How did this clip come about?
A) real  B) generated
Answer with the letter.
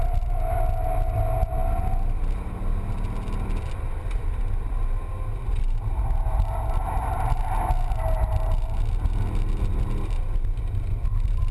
A